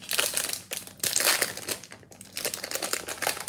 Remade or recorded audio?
recorded